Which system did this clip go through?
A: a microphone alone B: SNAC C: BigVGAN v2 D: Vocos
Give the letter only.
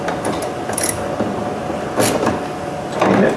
A